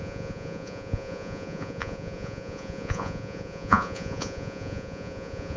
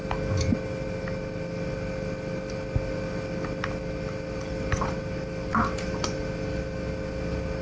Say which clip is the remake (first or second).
first